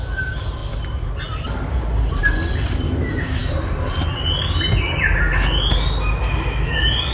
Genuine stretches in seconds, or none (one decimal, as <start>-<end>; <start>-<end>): 0.0-7.1